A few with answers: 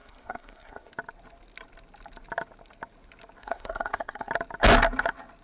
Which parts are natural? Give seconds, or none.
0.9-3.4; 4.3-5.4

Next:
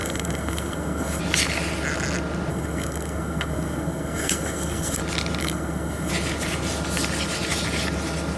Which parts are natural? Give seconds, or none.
1.2-2.5; 5.0-5.4; 6.1-8.4

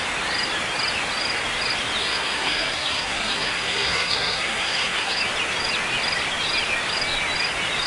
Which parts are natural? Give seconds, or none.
0.0-2.0; 5.2-7.9

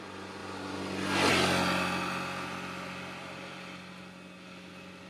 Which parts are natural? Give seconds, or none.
0.0-5.1